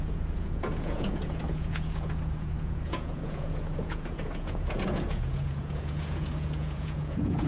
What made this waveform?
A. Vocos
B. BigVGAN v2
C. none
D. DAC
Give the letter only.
A